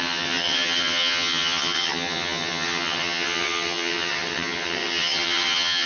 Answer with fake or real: fake